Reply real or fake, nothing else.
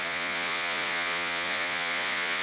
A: fake